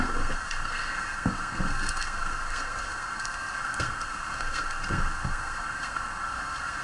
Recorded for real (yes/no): no